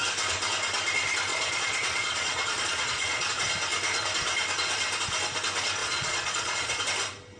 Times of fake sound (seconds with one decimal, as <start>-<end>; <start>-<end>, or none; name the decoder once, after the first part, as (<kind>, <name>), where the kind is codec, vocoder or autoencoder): 1.3-3.3 (vocoder, Vocos); 5.8-6.8

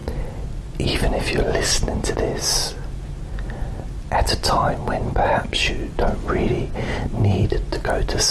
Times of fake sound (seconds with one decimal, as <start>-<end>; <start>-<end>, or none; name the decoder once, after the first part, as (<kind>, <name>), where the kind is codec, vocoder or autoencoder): 4.8-6.4 (vocoder, Vocos)

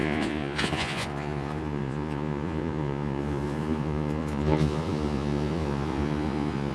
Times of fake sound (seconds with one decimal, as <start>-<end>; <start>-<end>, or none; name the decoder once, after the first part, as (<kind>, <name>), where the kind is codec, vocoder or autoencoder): 0.0-6.7 (vocoder, Vocos)

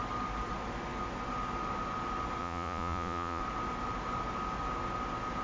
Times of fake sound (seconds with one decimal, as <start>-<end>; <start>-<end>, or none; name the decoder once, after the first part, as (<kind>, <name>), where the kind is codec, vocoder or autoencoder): 2.4-3.4 (vocoder, Vocos)

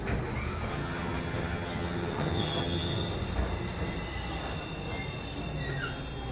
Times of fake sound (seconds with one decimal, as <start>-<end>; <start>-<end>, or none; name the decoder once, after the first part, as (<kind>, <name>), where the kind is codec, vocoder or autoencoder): 0.7-3.1 (vocoder, HiFi-GAN)

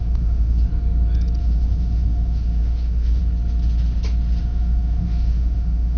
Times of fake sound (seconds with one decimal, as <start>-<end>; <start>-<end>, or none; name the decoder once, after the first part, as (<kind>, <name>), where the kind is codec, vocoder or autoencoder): 0.0-0.7 (autoencoder, DAC-VAE); 1.4-3.2; 4.4-6.0